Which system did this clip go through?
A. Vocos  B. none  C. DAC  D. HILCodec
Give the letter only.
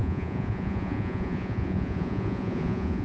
A